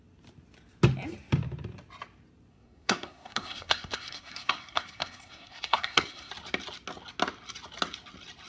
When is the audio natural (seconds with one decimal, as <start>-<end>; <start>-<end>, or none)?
0.0-2.5; 6.3-8.5